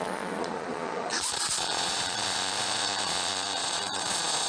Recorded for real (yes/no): no